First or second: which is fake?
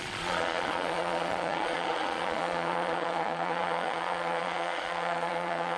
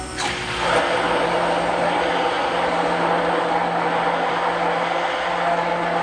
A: first